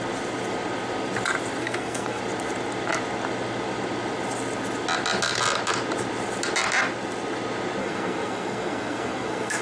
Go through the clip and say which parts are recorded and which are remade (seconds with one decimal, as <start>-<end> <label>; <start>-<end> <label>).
0.0-1.6 recorded; 1.6-2.2 remade; 2.2-7.8 recorded; 7.8-9.6 remade